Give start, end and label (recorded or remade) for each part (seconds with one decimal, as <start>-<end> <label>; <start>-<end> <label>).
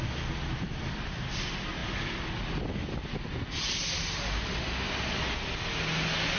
0.0-6.4 recorded